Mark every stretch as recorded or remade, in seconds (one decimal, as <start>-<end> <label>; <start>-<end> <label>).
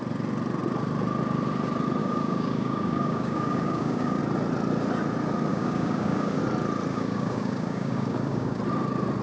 0.0-2.0 recorded; 2.0-4.2 remade; 4.2-5.5 recorded; 5.5-6.4 remade; 6.4-6.9 recorded; 6.9-8.6 remade; 8.6-9.2 recorded